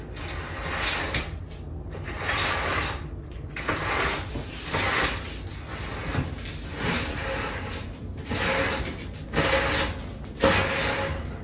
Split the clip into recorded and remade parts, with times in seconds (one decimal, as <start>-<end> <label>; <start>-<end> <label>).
0.0-11.4 recorded